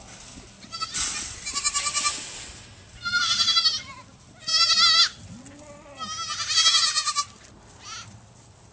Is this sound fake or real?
real